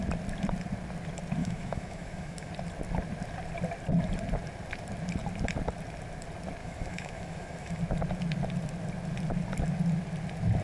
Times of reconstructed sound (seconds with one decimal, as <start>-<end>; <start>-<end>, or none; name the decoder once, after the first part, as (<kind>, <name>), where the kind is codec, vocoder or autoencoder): 1.4-2.5 (autoencoder, DAC-VAE); 6.6-7.8